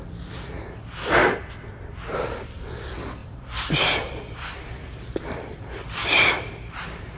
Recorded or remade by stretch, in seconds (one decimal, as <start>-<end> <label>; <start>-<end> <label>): 0.0-3.2 recorded; 3.2-6.5 remade; 6.5-7.2 recorded